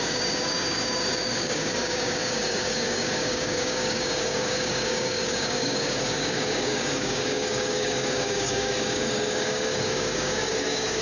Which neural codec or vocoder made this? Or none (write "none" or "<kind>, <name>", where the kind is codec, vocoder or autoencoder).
codec, DAC